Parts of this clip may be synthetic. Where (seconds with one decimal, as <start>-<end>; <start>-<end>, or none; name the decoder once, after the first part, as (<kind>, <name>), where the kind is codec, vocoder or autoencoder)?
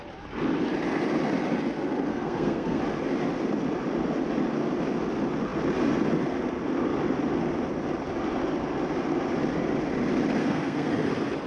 2.1-2.8 (codec, SNAC); 10.4-10.9